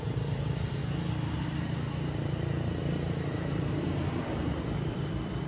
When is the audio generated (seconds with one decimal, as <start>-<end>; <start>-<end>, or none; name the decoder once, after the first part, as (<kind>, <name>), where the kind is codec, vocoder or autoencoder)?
0.0-0.8 (vocoder, BigVGAN v2); 4.1-5.5